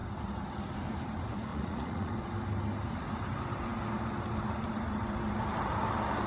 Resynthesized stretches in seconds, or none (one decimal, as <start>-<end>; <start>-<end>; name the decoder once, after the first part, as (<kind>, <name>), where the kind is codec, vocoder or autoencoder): 1.5-2.1 (vocoder, Vocos)